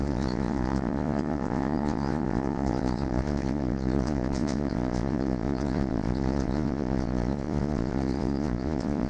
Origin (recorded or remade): remade